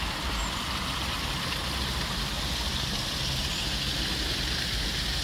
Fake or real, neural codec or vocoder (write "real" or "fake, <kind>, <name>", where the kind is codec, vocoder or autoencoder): real